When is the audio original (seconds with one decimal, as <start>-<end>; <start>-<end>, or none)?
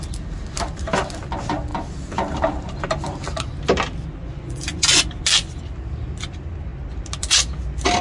0.0-4.2; 5.0-8.0